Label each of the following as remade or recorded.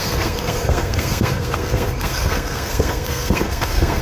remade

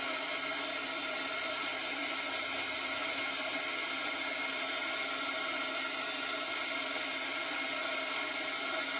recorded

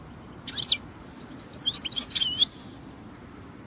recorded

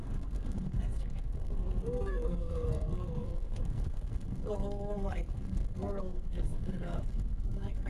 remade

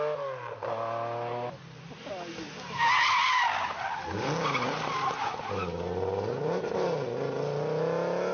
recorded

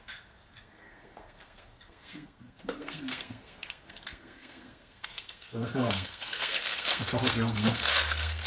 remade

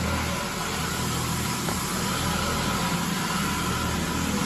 recorded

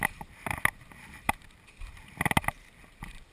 recorded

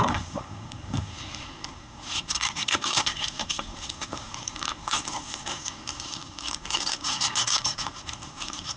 remade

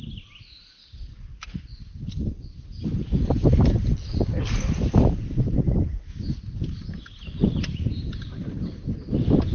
recorded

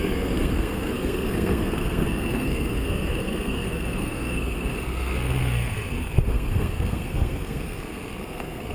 remade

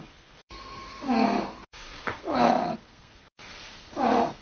remade